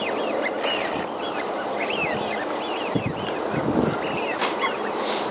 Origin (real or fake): real